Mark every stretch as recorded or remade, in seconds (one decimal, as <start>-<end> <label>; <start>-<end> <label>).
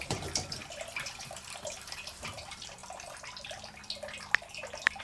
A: 0.0-0.6 remade; 0.6-1.9 recorded; 1.9-2.8 remade; 2.8-5.0 recorded